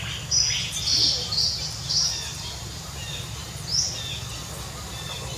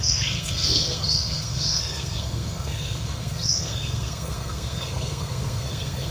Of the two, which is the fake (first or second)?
second